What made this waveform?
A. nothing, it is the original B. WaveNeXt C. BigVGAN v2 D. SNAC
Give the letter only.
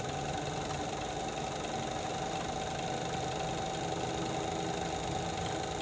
A